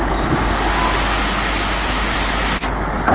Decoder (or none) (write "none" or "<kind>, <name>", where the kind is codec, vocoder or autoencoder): none